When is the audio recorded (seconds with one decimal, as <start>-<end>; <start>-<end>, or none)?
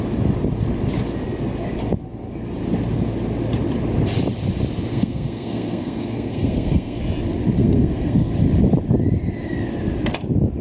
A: 0.0-4.9; 7.0-7.6; 8.3-10.6